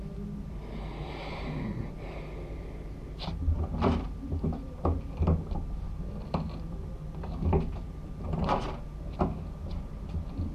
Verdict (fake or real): real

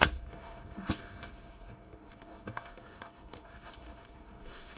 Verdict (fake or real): fake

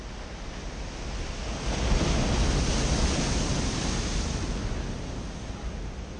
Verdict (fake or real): real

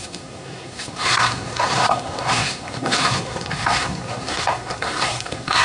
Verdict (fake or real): fake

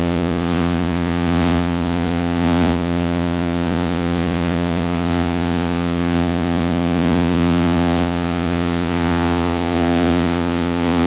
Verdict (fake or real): fake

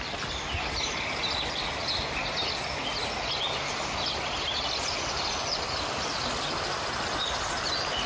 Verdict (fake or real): real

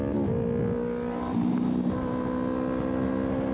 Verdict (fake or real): real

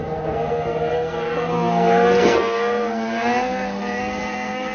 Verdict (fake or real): fake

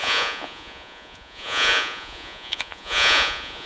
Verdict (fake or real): fake